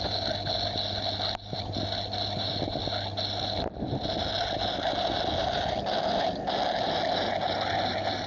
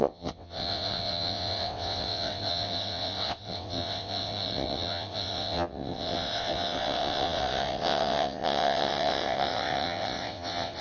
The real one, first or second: first